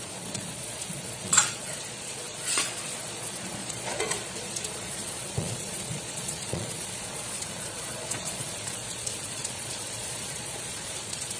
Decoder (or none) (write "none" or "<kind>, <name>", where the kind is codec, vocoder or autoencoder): vocoder, Vocos